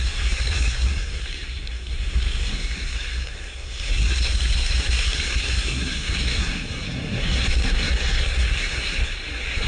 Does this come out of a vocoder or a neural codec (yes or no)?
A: yes